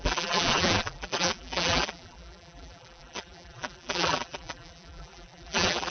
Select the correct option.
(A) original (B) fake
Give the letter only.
B